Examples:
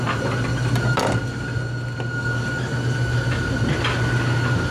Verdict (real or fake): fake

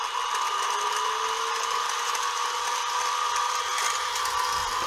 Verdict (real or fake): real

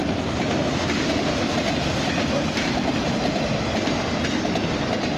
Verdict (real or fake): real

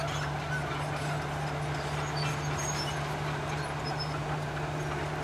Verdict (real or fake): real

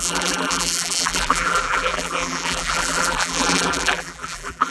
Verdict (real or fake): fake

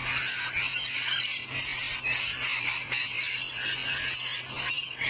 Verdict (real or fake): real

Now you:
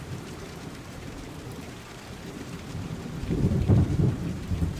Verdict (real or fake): fake